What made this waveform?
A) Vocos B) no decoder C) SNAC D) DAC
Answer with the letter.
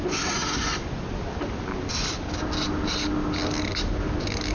B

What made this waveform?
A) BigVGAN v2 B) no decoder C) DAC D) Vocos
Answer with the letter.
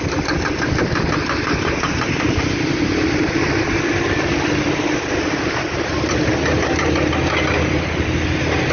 B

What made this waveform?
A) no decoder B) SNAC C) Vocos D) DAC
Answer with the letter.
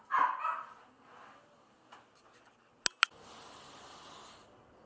A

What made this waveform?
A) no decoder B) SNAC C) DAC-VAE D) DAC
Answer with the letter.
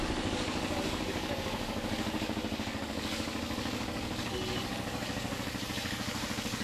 D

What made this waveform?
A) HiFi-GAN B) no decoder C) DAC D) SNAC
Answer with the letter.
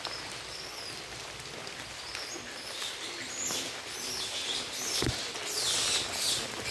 B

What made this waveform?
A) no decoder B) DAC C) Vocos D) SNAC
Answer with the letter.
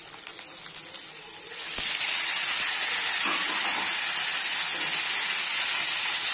A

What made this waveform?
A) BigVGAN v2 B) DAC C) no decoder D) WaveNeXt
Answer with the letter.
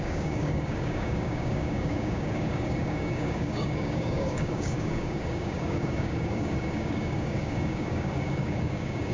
B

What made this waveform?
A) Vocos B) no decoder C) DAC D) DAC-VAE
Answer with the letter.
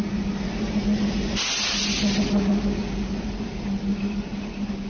B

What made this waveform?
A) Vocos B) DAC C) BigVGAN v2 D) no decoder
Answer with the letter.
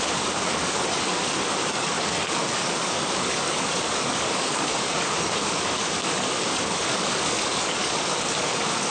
B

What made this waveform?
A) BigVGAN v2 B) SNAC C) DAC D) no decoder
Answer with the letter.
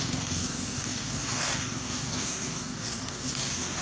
C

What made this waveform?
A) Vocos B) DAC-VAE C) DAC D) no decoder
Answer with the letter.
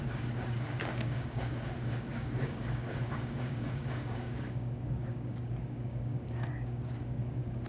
C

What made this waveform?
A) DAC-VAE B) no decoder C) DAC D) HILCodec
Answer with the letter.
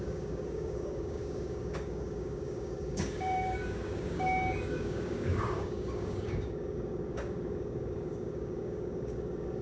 C